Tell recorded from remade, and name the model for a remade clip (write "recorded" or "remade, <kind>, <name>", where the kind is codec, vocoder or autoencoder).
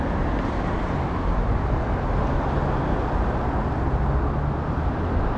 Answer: recorded